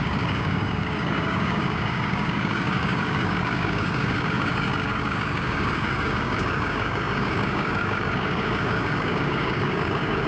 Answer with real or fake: fake